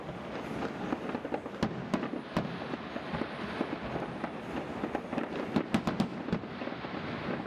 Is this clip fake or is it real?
real